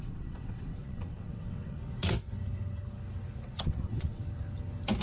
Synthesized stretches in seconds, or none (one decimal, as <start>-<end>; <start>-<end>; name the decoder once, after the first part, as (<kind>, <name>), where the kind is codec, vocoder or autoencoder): 0.0-1.8 (vocoder, WaveNeXt); 3.6-4.2